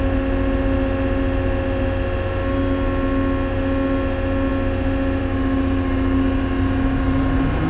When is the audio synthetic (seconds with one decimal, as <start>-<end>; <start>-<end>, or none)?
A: none